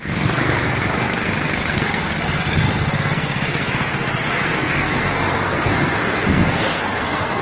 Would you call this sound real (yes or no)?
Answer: no